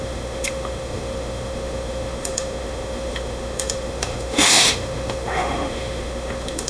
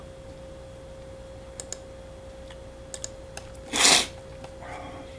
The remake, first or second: first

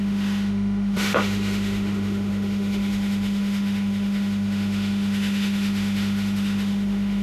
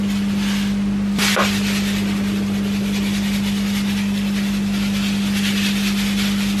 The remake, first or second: first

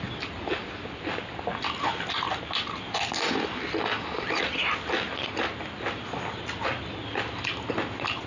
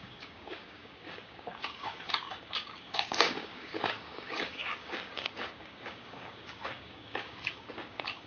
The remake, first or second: second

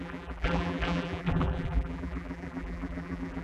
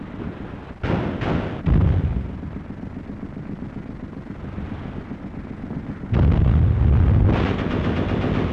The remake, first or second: first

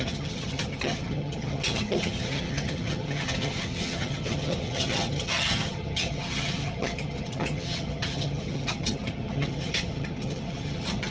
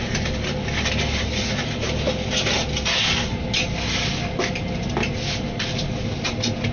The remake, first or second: first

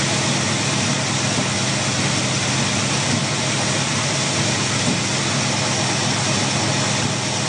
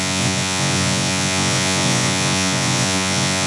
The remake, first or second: second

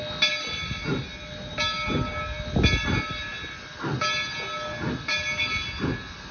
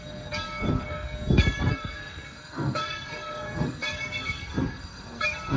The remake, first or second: second